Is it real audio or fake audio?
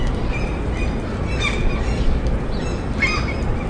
real